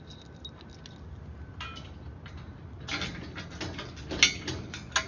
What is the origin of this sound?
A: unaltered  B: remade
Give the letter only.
A